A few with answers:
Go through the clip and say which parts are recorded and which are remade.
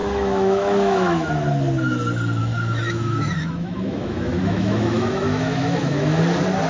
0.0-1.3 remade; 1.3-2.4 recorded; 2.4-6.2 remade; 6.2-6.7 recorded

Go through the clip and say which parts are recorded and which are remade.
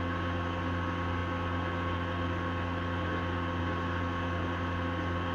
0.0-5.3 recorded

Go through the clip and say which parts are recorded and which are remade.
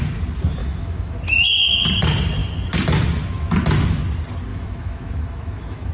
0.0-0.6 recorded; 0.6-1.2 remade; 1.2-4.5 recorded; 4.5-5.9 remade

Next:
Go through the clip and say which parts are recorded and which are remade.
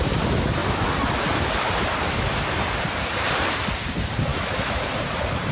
0.0-4.3 recorded; 4.3-4.8 remade; 4.8-5.5 recorded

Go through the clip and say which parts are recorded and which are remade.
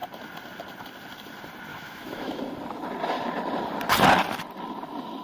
0.0-1.7 recorded; 1.7-2.4 remade; 2.4-5.2 recorded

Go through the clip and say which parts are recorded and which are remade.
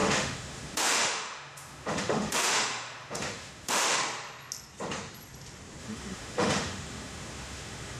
0.0-4.0 remade; 4.0-5.8 recorded; 5.8-8.0 remade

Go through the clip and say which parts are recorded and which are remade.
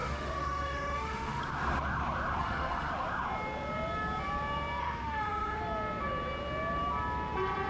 0.0-1.4 remade; 1.4-2.4 recorded; 2.4-2.9 remade; 2.9-4.8 recorded; 4.8-5.6 remade; 5.6-7.7 recorded